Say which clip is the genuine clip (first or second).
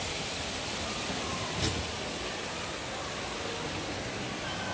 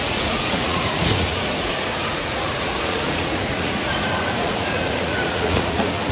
first